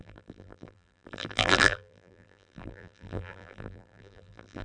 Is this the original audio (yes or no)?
no